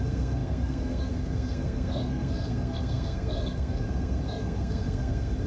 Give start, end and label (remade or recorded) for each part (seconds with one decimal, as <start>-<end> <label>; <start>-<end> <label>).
0.0-5.5 remade